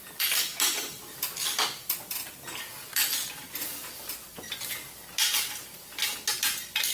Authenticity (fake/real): real